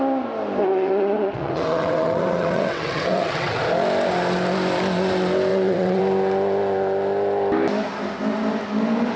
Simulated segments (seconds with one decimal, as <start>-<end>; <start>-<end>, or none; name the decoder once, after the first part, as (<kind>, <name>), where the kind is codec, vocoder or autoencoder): 0.7-3.6 (vocoder, WaveNeXt); 5.5-6.0